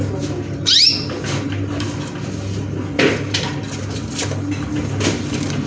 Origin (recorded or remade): recorded